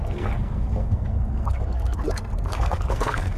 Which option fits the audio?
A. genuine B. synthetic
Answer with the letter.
B